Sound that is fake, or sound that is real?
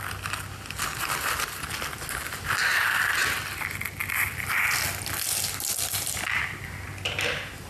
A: real